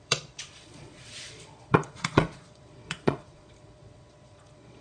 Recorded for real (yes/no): no